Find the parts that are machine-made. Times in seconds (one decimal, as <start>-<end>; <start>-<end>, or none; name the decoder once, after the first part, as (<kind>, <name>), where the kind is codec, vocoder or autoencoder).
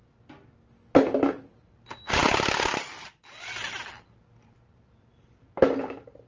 none